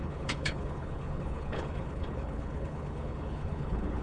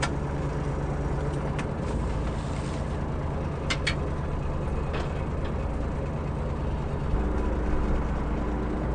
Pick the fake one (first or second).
first